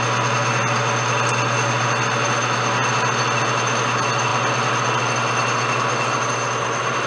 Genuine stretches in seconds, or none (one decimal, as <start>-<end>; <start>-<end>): 0.0-7.1